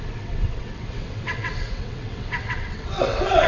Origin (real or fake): fake